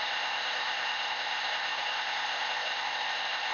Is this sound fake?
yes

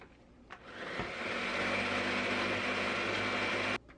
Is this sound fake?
no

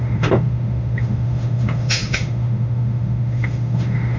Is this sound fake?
yes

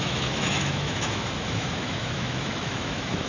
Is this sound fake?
yes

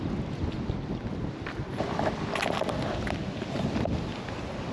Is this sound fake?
no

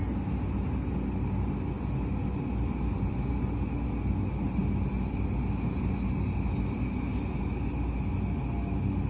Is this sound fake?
no